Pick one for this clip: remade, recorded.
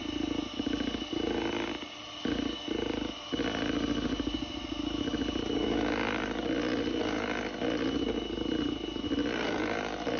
recorded